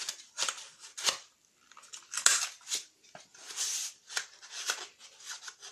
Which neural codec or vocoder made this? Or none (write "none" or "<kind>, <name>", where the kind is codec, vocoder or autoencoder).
vocoder, BigVGAN v2